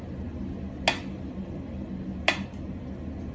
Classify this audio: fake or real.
real